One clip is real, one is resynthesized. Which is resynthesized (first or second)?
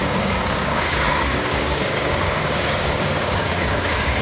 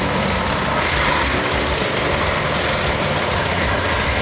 first